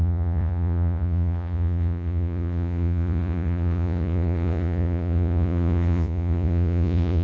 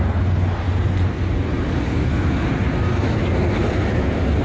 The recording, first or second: second